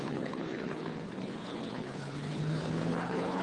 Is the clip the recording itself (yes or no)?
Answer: no